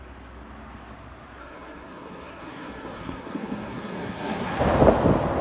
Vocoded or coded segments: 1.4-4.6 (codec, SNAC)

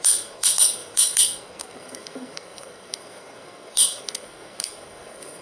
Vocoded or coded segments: 0.0-5.4 (codec, SNAC)

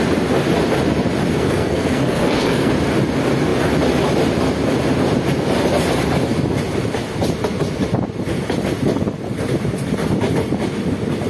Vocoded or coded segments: 1.3-2.7 (codec, SNAC)